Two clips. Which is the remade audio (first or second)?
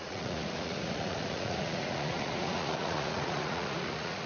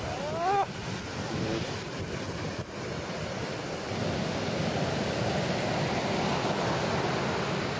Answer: first